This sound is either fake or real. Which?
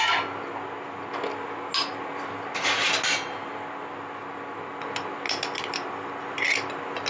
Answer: real